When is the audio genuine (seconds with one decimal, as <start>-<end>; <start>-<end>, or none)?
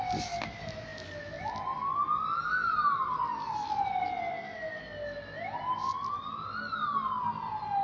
0.0-7.8